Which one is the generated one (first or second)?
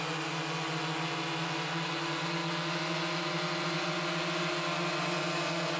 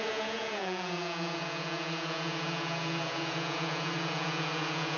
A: second